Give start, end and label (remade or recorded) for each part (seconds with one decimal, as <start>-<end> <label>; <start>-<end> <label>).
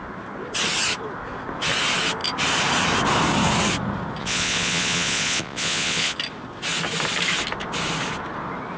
0.0-4.2 recorded; 4.2-6.2 remade; 6.2-8.8 recorded